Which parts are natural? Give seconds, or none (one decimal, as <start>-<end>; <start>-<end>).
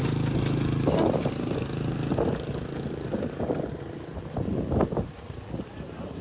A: 0.0-6.2